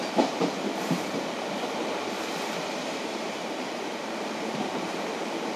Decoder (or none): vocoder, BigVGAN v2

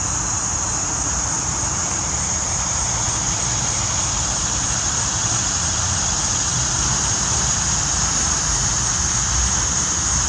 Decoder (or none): vocoder, BigVGAN v2